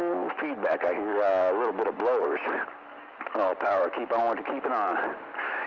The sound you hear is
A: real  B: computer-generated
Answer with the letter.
A